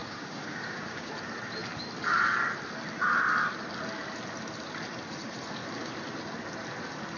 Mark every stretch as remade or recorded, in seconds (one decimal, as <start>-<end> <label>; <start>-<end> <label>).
0.0-1.1 remade; 1.1-7.2 recorded